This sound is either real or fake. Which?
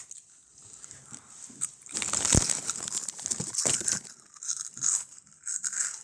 real